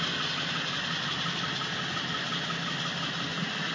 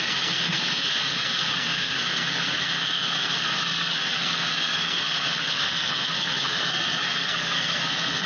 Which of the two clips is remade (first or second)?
second